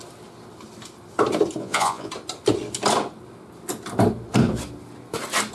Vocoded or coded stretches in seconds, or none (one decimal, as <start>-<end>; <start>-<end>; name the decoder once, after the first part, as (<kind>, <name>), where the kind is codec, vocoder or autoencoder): 1.6-2.1 (vocoder, Vocos)